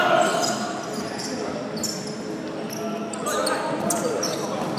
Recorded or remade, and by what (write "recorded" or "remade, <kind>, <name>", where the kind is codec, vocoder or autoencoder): recorded